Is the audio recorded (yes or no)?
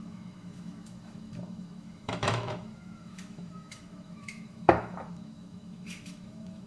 no